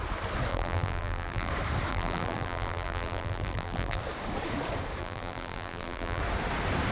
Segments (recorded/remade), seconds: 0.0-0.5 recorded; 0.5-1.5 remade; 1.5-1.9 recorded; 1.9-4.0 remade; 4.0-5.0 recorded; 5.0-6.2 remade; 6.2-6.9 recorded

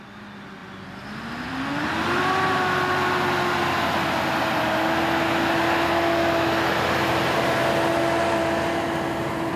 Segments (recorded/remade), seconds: 0.0-9.6 recorded

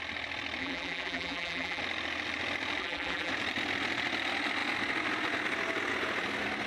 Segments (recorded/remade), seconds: 0.0-0.6 recorded; 0.6-1.8 remade; 1.8-2.8 recorded; 2.8-3.3 remade; 3.3-6.7 recorded

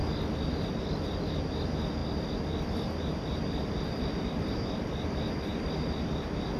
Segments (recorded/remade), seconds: 0.0-6.6 recorded